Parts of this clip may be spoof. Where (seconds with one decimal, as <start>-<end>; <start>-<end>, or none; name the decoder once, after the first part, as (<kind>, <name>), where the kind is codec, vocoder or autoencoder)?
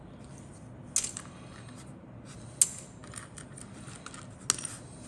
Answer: none